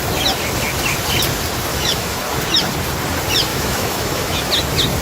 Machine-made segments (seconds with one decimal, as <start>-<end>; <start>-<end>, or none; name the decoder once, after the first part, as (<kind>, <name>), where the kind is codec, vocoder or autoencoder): 1.7-2.2 (autoencoder, DAC-VAE); 3.5-4.5